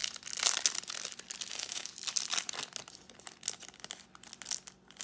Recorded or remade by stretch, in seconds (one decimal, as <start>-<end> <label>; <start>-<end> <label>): 0.0-1.5 recorded; 1.5-1.9 remade; 1.9-5.0 recorded